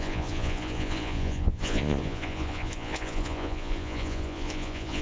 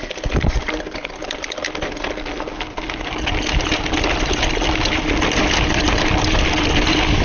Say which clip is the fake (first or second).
first